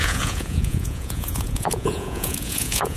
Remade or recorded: remade